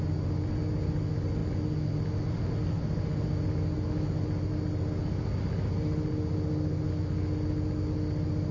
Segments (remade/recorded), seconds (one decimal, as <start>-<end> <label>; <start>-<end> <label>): 0.0-8.5 recorded